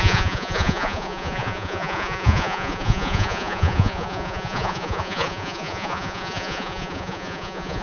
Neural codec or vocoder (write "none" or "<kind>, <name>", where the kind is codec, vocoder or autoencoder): vocoder, Vocos